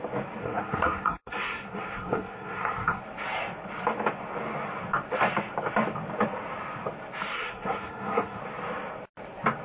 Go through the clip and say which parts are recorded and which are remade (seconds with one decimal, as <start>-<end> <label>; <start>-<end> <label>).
0.0-0.4 recorded; 0.4-3.0 remade; 3.0-7.3 recorded; 7.3-8.4 remade; 8.4-9.6 recorded